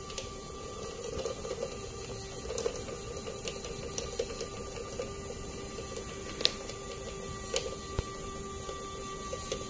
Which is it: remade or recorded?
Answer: recorded